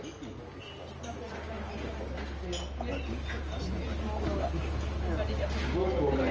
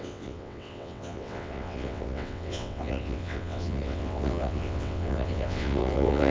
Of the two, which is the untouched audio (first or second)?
first